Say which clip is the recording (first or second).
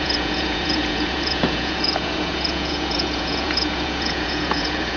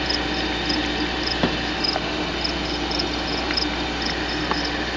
second